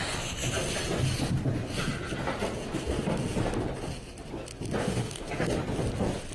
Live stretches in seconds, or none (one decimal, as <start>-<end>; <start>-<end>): 0.0-4.8; 5.6-6.3